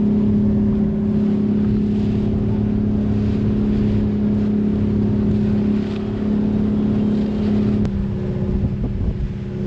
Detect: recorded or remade recorded